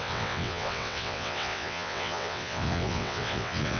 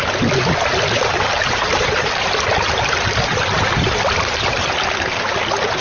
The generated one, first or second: first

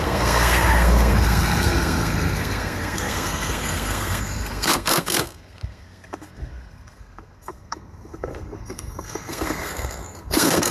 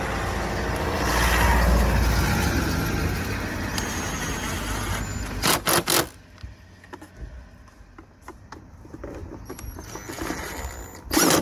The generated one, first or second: first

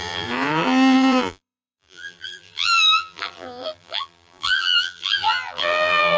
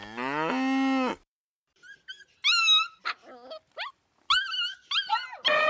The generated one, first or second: first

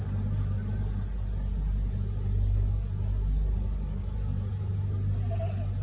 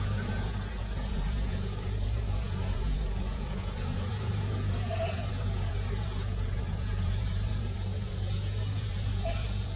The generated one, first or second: second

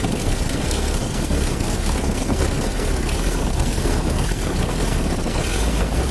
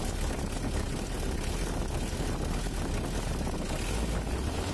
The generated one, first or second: first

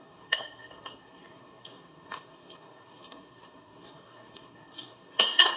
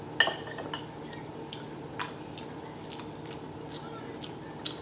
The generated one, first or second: first